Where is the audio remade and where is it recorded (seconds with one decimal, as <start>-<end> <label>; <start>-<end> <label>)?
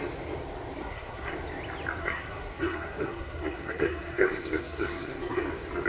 0.0-0.8 recorded; 0.8-1.3 remade; 1.3-2.0 recorded; 2.0-5.4 remade; 5.4-5.9 recorded